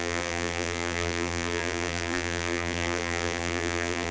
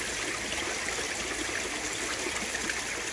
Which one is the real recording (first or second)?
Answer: second